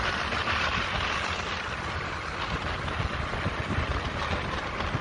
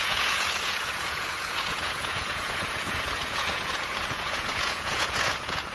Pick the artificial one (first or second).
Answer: second